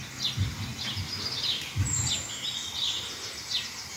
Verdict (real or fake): real